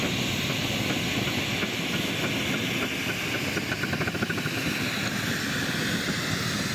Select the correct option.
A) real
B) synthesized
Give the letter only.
A